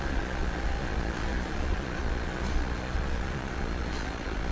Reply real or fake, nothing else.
fake